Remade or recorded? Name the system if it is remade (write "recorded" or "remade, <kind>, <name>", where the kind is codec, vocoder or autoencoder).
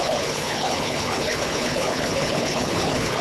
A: remade, codec, HILCodec